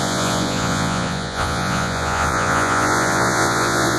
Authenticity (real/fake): fake